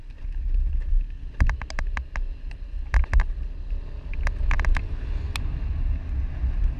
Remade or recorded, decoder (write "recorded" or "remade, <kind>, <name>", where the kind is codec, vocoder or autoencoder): recorded